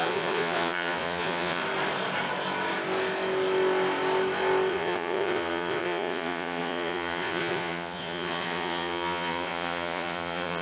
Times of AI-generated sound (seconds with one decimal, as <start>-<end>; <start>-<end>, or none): 0.0-1.6; 4.7-10.6